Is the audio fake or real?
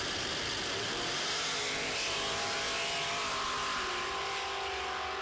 real